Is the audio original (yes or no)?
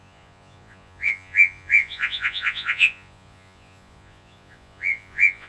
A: no